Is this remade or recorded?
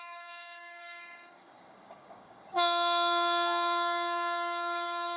remade